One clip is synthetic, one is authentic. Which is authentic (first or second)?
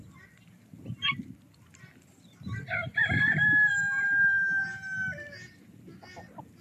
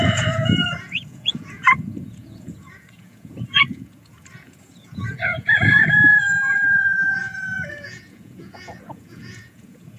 first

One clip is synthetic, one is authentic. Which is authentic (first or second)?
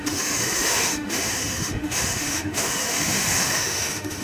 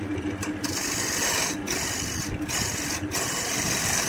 second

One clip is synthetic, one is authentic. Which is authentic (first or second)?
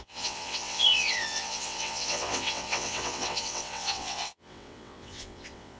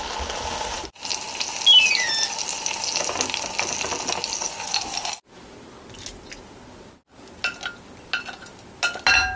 second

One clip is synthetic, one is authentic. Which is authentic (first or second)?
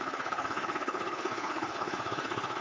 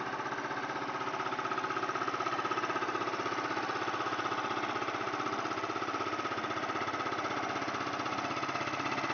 second